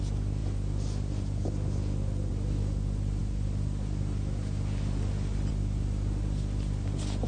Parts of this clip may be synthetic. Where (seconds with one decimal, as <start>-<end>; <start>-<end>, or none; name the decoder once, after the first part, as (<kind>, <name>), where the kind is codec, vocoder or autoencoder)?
none